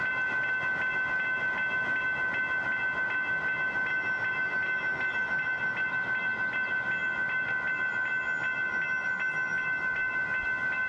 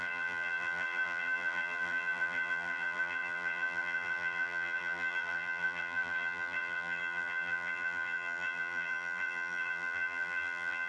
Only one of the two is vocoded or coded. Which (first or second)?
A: second